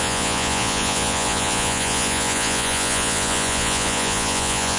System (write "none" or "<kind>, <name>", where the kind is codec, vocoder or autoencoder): vocoder, Vocos